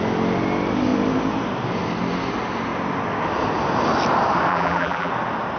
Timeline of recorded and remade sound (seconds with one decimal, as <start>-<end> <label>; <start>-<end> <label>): 0.0-4.5 recorded; 4.5-5.1 remade; 5.1-5.6 recorded